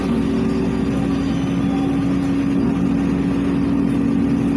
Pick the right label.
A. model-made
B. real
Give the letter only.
B